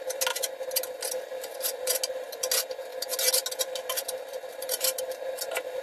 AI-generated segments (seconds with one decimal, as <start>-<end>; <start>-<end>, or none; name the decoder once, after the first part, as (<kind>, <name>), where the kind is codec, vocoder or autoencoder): 4.5-5.0 (vocoder, BigVGAN v2)